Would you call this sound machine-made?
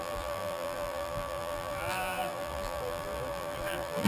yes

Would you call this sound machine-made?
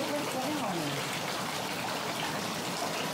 no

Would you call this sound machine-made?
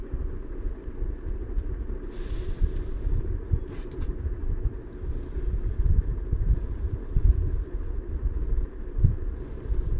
no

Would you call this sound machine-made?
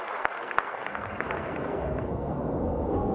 yes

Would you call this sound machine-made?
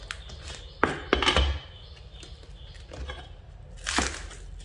no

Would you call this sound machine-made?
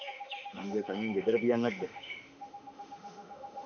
yes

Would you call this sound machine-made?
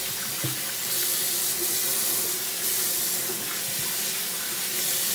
no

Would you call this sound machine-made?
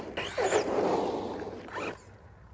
no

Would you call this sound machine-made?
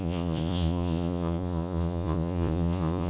yes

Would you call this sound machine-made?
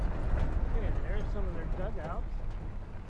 no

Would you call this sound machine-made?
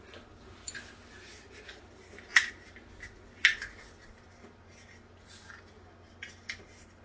no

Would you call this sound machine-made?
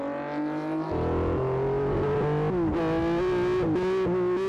no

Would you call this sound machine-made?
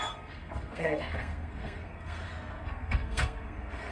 yes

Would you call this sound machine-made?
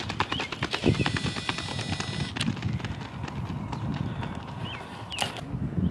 no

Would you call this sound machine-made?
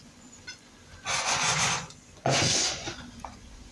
yes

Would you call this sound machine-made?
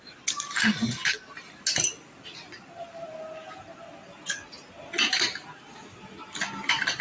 no